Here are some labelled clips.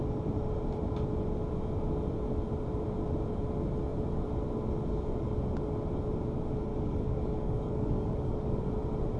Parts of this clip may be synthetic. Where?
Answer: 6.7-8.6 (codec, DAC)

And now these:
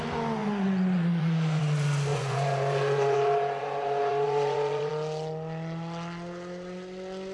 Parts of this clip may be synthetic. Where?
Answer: 0.4-1.6 (vocoder, Vocos); 2.1-4.9

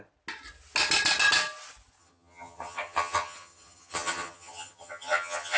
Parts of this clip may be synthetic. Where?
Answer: 2.0-5.6 (vocoder, HiFi-GAN)

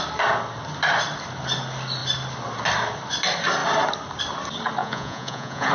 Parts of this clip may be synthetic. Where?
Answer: 4.8-5.7 (vocoder, Vocos)

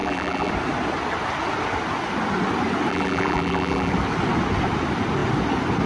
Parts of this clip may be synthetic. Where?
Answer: 0.0-0.5 (vocoder, BigVGAN v2); 2.9-3.9

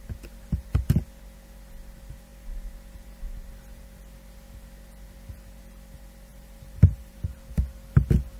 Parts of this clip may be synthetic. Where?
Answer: 6.3-7.1 (vocoder, BigVGAN v2)

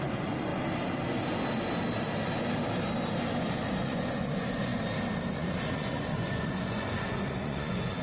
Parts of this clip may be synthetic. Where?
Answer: 0.0-0.5 (vocoder, Vocos); 3.5-4.7; 5.3-8.0